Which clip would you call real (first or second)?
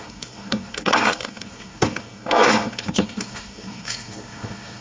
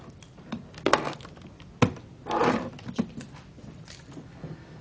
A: second